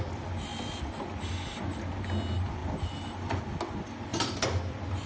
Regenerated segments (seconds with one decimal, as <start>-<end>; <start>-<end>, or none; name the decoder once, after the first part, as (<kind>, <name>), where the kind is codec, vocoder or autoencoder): 0.5-1.3 (vocoder, BigVGAN v2); 2.6-3.4; 4.1-5.1